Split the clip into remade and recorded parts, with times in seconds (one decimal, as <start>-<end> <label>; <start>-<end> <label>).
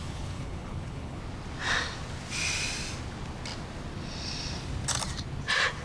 0.0-1.2 remade; 1.2-5.8 recorded